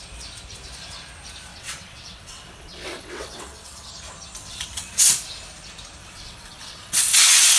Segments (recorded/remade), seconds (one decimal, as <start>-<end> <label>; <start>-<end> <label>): 0.0-1.5 recorded; 1.5-3.9 remade; 3.9-4.4 recorded; 4.4-5.1 remade; 5.1-6.0 recorded; 6.0-7.6 remade

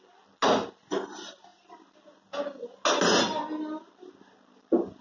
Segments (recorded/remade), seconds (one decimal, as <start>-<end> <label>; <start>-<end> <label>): 0.0-5.0 recorded